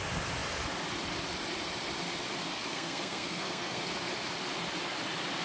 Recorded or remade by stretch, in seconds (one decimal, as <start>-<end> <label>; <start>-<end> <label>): 0.0-2.5 recorded; 2.5-3.8 remade; 3.8-5.4 recorded